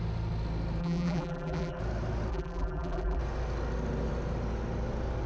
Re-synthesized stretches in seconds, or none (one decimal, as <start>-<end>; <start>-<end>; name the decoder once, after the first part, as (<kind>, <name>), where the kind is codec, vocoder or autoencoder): 0.8-1.8 (vocoder, BigVGAN v2); 2.3-3.2